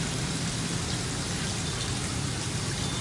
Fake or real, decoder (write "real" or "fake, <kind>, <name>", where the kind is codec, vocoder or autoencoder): real